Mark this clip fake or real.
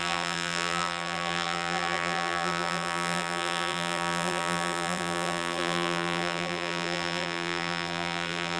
fake